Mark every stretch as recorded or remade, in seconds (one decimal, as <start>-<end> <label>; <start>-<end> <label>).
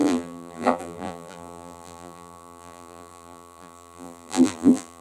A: 0.0-5.0 remade